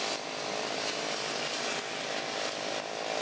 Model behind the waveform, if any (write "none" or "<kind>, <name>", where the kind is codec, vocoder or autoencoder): vocoder, BigVGAN v2